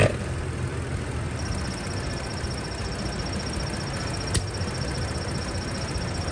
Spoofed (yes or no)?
no